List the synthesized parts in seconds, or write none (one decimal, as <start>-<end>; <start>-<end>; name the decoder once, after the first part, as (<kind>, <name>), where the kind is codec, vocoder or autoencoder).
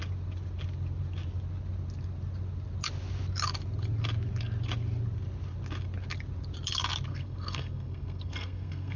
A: 7.1-9.0 (codec, SNAC)